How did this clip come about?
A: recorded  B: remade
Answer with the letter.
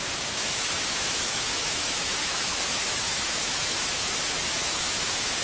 B